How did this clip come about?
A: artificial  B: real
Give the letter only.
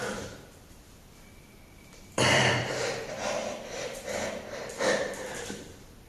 A